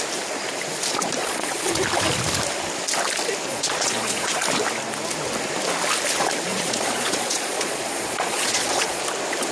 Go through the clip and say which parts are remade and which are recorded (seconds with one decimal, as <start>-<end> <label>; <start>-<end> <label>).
0.0-1.2 recorded; 1.2-1.7 remade; 1.7-3.5 recorded; 3.5-4.4 remade; 4.4-6.5 recorded; 6.5-9.0 remade; 9.0-9.5 recorded